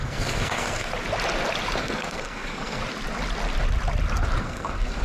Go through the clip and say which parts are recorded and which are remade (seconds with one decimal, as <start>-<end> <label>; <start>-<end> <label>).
0.0-0.9 remade; 0.9-1.8 recorded; 1.8-2.8 remade; 2.8-4.4 recorded; 4.4-5.0 remade